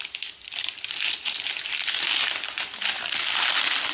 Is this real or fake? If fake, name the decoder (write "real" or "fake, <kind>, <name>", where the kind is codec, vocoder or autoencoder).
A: real